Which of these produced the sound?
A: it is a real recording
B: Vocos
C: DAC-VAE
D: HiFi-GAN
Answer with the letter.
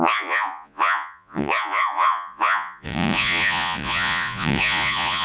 B